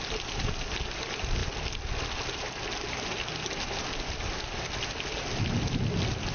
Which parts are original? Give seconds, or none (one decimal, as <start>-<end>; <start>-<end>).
0.0-6.3

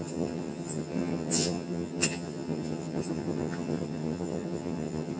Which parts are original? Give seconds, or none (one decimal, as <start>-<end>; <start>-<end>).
none

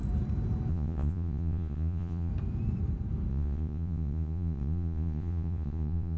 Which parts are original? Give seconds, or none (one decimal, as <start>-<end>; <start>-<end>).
0.0-0.7; 2.3-3.3

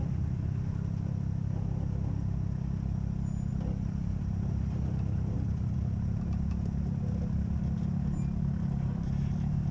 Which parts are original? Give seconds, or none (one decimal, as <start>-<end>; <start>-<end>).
0.0-3.5; 4.2-9.7

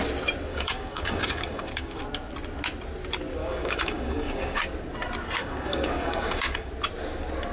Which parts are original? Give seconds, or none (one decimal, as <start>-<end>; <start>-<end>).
0.0-0.5; 2.0-3.4; 4.6-5.4; 6.7-7.5

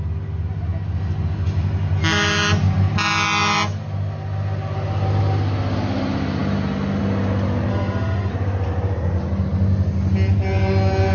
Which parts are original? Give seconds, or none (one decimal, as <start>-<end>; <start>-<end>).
0.0-7.7; 8.3-11.1

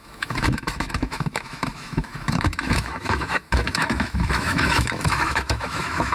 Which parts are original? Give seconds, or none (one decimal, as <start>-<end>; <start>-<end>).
none